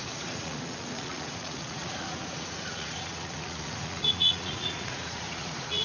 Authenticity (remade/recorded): remade